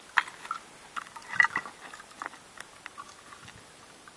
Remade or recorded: recorded